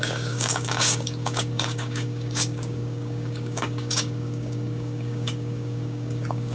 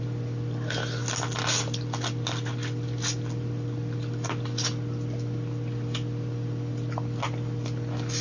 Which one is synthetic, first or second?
first